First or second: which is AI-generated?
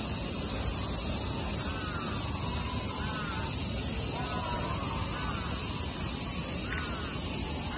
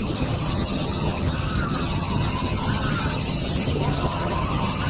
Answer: second